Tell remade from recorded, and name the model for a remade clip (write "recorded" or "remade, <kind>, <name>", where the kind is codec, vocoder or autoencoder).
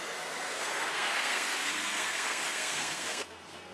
remade, codec, SNAC